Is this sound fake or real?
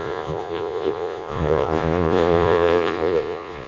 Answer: fake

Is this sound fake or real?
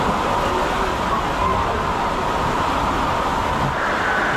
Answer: real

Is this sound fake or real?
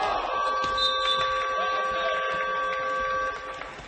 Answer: real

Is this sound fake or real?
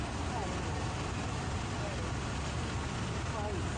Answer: real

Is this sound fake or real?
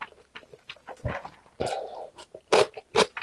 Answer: fake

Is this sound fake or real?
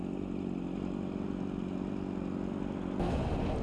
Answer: real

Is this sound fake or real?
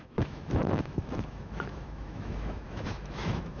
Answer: fake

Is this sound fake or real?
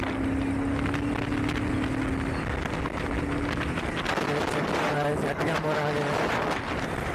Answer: real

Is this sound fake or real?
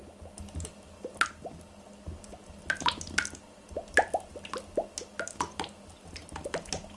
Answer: real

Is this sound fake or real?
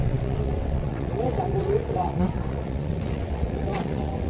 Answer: fake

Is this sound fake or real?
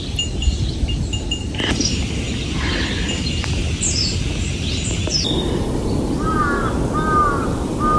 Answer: real